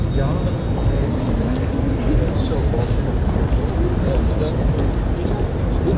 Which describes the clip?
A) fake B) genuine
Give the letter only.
B